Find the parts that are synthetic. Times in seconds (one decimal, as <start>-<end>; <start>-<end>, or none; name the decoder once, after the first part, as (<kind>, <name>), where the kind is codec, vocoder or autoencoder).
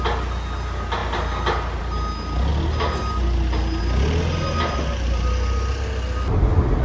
none